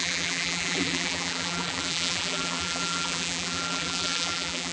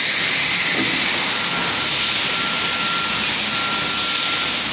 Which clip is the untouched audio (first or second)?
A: second